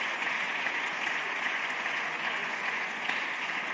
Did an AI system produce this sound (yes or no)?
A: yes